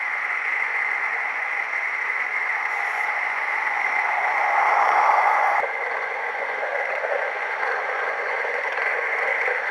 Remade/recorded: remade